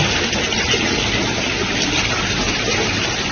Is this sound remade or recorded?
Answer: recorded